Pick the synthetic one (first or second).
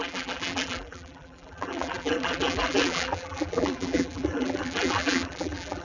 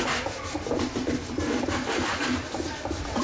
first